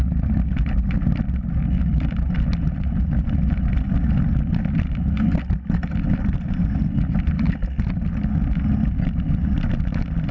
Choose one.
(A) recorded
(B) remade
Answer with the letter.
A